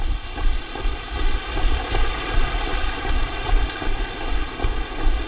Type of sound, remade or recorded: recorded